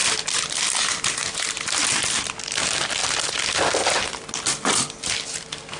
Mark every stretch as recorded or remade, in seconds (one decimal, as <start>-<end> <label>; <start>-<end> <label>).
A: 0.0-5.8 recorded